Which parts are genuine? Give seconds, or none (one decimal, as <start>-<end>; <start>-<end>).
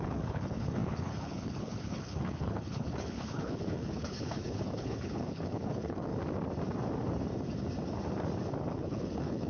6.1-8.7